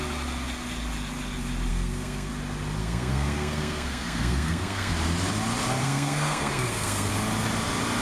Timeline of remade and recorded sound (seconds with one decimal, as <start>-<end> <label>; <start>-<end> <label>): 0.0-1.7 recorded; 1.7-2.3 remade; 2.3-2.8 recorded; 2.8-4.9 remade; 4.9-5.8 recorded; 5.8-7.1 remade; 7.1-8.0 recorded

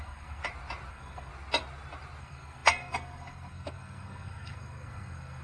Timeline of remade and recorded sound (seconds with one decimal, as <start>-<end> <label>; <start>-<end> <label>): 0.0-0.4 remade; 0.4-0.9 recorded; 0.9-1.3 remade; 1.3-2.2 recorded; 2.2-5.4 remade

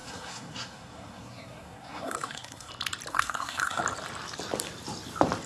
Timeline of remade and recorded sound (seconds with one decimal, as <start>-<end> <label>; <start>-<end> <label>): 0.0-2.7 remade; 2.7-3.1 recorded; 3.1-3.8 remade; 3.8-5.5 recorded

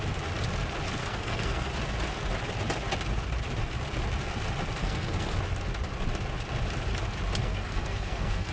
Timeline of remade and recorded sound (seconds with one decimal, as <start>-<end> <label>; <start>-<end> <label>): 0.0-1.0 recorded; 1.0-1.7 remade; 1.7-4.8 recorded; 4.8-5.4 remade; 5.4-7.4 recorded; 7.4-8.5 remade

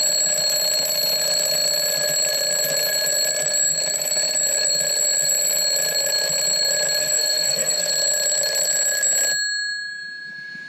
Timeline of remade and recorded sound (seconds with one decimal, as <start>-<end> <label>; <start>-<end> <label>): 0.0-7.0 recorded; 7.0-7.9 remade; 7.9-10.7 recorded

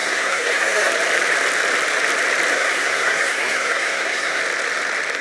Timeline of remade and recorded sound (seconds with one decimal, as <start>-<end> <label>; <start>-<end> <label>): 0.0-0.9 remade; 0.9-2.5 recorded; 2.5-4.4 remade; 4.4-5.2 recorded

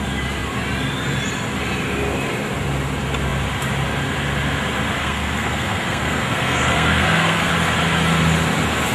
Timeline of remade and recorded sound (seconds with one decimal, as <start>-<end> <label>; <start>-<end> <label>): 0.0-5.0 recorded; 5.0-7.5 remade; 7.5-8.9 recorded